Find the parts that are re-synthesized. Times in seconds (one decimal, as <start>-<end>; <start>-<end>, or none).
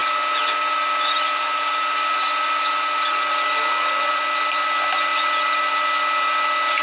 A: none